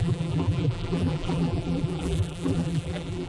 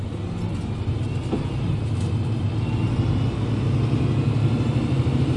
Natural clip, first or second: second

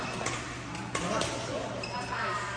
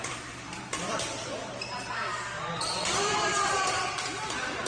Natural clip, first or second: first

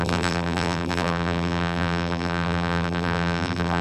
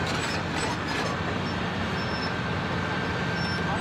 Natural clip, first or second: second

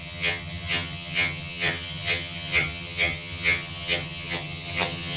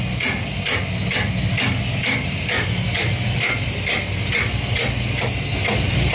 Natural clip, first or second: second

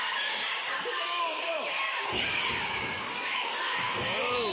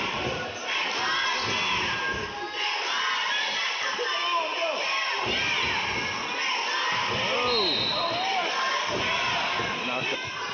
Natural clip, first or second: second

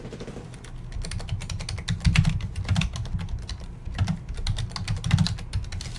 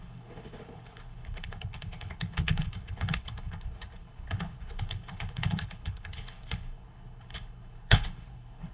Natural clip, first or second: first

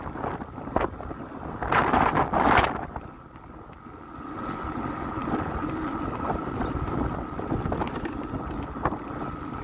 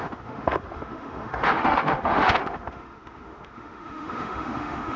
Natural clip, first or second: first